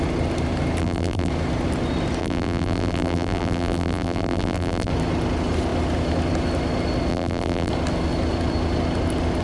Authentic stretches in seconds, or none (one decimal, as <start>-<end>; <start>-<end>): 0.0-0.8; 1.3-2.2; 4.9-7.1; 7.7-9.4